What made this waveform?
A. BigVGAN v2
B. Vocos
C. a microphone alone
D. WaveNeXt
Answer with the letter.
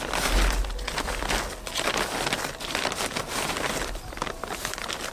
C